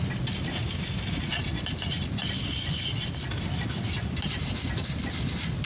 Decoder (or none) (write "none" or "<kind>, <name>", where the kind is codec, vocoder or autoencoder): none